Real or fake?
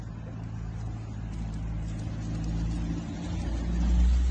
real